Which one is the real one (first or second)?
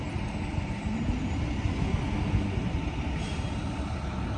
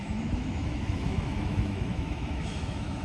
first